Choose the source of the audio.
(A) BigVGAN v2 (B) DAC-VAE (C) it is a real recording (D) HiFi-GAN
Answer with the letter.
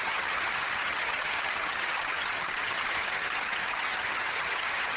D